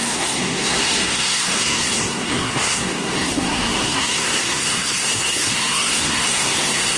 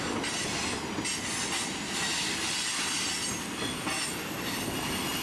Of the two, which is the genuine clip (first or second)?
second